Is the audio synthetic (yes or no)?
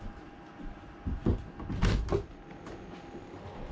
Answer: no